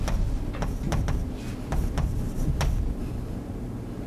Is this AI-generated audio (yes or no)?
no